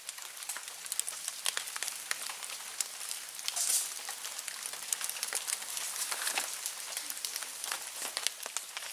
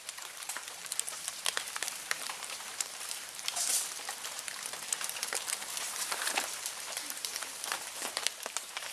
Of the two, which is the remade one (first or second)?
second